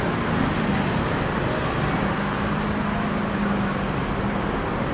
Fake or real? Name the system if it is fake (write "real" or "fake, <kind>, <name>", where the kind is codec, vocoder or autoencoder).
real